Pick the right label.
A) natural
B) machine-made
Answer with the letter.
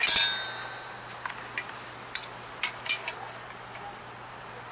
A